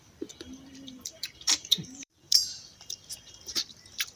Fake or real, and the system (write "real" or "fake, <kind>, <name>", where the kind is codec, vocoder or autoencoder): fake, vocoder, BigVGAN v2